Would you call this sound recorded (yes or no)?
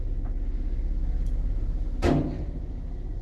yes